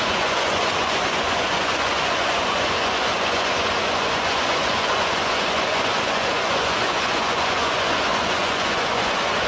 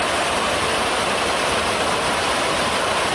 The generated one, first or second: first